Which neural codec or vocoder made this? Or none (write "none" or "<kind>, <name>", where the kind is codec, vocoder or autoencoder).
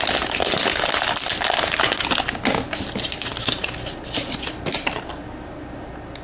none